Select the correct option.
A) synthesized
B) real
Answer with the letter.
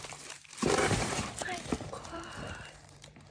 A